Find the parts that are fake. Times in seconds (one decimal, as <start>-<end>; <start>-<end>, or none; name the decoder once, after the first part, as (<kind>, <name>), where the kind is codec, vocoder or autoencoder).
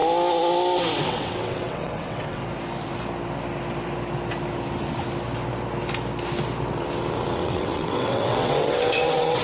1.0-2.4 (vocoder, WaveNeXt); 7.4-9.4